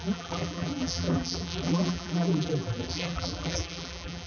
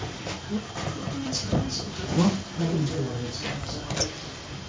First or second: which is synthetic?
first